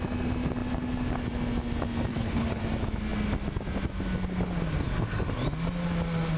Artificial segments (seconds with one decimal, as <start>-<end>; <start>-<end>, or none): 2.1-2.6